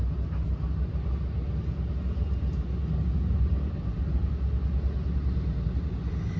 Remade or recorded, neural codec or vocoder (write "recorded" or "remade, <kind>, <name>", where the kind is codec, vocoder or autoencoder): recorded